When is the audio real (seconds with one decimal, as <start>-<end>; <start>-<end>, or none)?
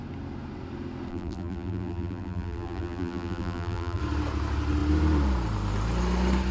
0.0-1.1; 4.0-6.5